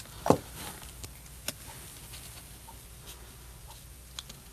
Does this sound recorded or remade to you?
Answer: recorded